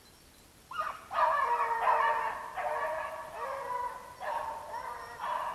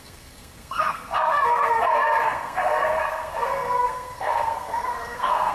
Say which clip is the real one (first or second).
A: first